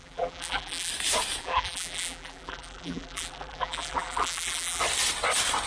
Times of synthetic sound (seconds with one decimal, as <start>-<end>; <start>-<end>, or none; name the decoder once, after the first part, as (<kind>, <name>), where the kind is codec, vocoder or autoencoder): 0.0-0.9 (vocoder, BigVGAN v2); 1.4-4.8